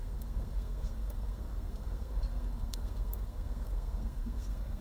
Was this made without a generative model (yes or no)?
no